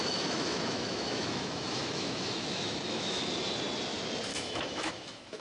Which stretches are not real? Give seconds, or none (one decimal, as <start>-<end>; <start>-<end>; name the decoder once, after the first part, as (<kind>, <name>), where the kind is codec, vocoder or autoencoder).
0.0-3.2 (autoencoder, DAC-VAE); 4.3-5.4